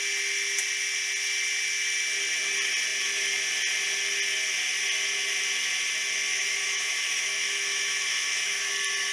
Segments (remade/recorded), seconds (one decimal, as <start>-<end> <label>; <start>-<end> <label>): 0.0-6.3 recorded; 6.3-8.7 remade; 8.7-9.1 recorded

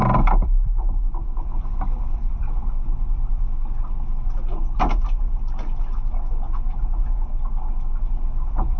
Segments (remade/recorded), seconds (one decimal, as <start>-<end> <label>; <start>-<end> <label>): 0.0-2.6 remade; 2.6-8.8 recorded

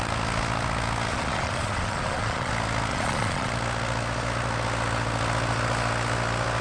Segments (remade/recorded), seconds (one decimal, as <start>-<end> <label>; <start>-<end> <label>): 0.0-1.1 recorded; 1.1-2.5 remade; 2.5-2.9 recorded; 2.9-3.5 remade; 3.5-6.6 recorded

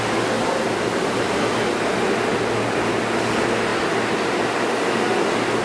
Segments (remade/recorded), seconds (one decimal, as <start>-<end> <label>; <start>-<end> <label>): 0.0-5.6 recorded

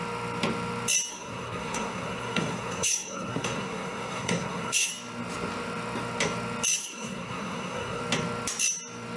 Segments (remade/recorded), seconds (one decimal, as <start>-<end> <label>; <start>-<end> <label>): 0.0-1.1 recorded; 1.1-4.9 remade; 4.9-6.8 recorded; 6.8-8.0 remade; 8.0-9.2 recorded

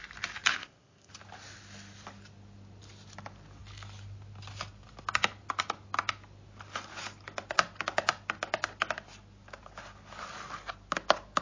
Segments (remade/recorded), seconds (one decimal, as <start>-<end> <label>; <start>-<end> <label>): 0.0-0.5 recorded; 0.5-1.1 remade; 1.1-11.4 recorded

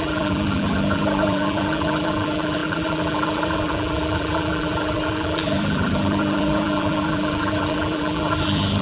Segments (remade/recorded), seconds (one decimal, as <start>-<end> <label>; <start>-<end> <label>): 0.0-8.8 remade